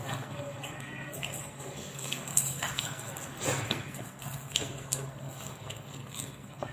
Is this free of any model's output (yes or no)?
no